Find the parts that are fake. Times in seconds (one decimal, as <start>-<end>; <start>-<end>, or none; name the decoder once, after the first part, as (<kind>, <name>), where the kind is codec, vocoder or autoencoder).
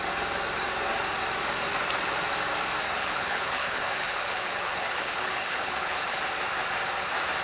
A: 3.0-6.2 (codec, HILCodec)